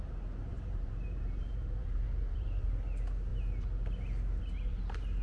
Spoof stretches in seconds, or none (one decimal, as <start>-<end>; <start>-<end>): 0.5-2.7